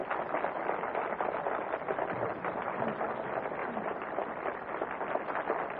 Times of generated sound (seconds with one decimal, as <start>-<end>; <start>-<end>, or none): 2.3-2.8; 3.6-4.3